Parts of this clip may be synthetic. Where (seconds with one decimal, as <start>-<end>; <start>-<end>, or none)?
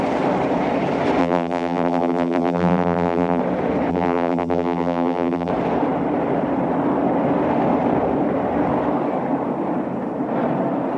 1.2-3.4; 3.9-5.5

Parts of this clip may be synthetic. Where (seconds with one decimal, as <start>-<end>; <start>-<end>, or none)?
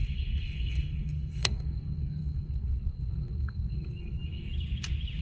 0.0-4.5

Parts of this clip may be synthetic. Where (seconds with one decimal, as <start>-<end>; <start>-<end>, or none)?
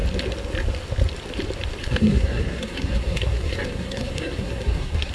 1.8-5.1